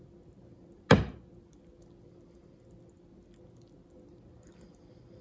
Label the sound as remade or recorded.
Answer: recorded